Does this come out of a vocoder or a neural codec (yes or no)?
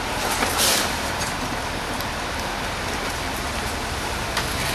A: yes